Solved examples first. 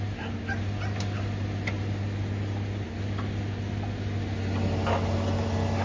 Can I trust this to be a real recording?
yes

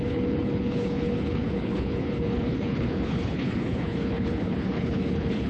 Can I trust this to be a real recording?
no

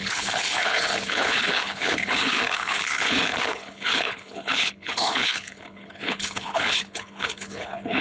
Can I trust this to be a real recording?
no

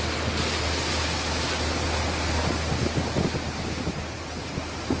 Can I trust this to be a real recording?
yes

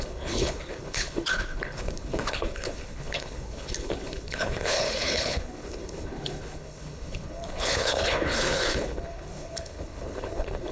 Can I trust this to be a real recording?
no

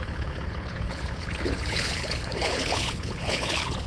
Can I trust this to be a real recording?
no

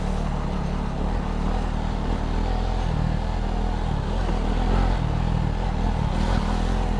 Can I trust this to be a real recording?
yes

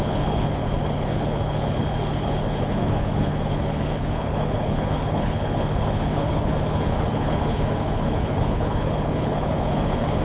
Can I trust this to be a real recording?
no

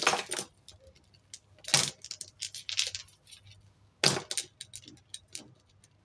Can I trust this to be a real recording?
yes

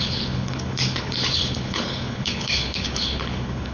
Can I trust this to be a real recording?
no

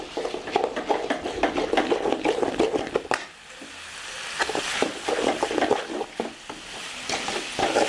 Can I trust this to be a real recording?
yes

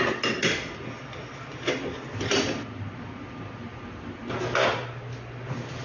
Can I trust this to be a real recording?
yes